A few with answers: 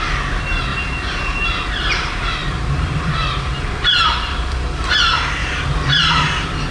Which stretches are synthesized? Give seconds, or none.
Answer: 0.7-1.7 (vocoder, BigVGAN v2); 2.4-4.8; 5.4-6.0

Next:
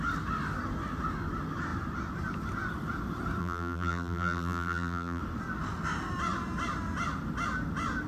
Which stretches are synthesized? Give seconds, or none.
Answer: 3.4-5.2 (vocoder, BigVGAN v2)

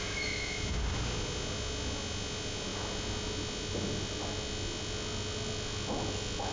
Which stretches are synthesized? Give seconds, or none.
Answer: none